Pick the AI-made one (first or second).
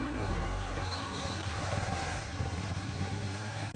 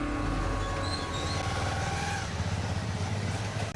first